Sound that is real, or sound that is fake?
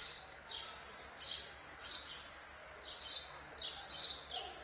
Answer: real